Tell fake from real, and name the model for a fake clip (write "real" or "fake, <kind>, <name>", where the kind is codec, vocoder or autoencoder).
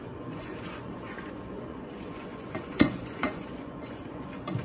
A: fake, vocoder, Vocos